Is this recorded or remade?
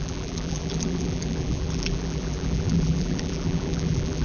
remade